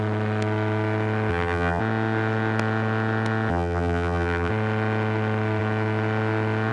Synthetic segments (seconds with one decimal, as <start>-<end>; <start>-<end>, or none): 1.3-1.8; 3.5-4.5